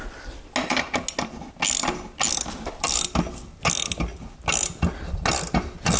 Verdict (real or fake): real